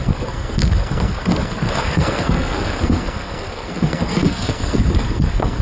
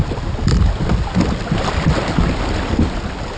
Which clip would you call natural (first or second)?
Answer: second